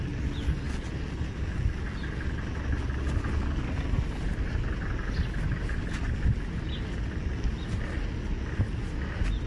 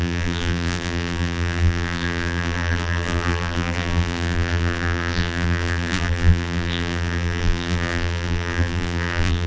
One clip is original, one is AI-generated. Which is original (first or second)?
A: first